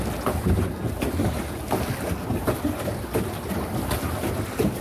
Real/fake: real